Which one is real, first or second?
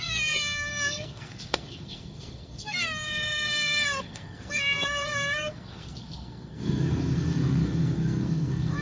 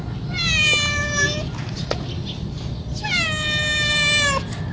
second